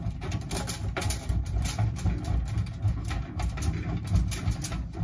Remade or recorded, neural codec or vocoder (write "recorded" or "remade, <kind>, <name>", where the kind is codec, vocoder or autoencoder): recorded